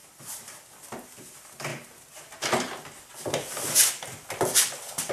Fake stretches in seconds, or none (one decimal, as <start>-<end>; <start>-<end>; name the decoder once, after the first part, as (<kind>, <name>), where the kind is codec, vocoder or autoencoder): 0.0-1.2 (vocoder, BigVGAN v2)

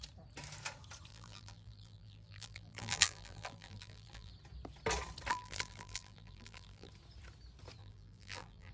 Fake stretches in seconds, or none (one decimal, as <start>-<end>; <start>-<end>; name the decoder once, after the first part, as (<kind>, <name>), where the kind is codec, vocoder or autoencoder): 1.1-4.3 (vocoder, BigVGAN v2); 5.3-6.9; 7.8-8.7